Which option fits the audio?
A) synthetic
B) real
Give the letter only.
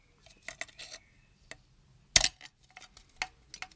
B